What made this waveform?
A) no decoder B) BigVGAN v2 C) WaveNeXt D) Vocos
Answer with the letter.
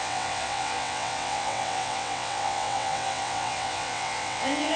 C